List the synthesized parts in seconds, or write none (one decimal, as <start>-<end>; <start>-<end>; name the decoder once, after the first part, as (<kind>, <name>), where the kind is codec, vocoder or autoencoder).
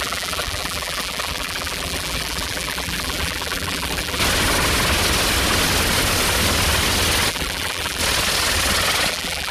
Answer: 0.0-4.2 (vocoder, BigVGAN v2); 7.3-8.0; 9.1-9.5